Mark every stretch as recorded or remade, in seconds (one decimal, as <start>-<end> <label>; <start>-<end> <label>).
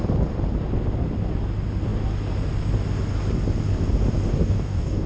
0.0-4.3 recorded; 4.3-5.1 remade